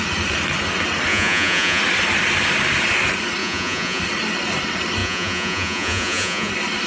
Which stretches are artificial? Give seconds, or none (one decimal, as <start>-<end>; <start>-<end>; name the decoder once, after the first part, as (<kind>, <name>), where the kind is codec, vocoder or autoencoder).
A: 1.1-1.8 (vocoder, Vocos); 3.4-4.0; 5.0-6.5